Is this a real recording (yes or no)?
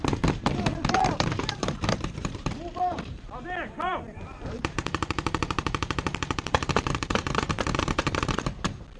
no